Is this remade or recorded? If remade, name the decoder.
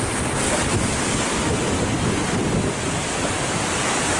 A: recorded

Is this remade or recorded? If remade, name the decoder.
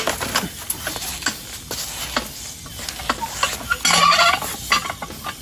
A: recorded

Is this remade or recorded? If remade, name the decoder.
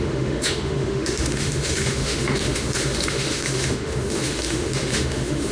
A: remade, autoencoder, DAC-VAE